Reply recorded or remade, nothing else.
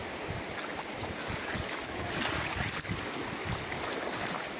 recorded